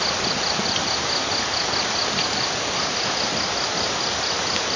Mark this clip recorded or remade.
recorded